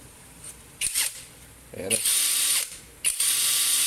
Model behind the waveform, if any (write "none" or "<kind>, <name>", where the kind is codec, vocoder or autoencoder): vocoder, BigVGAN v2